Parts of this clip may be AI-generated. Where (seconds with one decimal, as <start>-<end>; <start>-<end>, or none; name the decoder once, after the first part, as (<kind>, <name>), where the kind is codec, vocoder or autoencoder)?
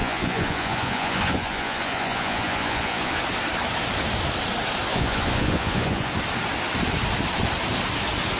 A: 0.0-3.2 (vocoder, Vocos); 4.9-6.1